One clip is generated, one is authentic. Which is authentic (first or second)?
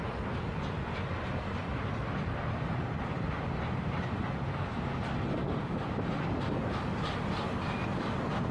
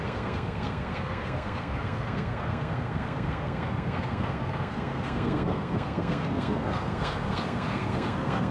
first